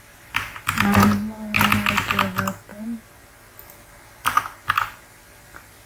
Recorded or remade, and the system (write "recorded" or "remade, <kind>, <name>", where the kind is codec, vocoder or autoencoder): recorded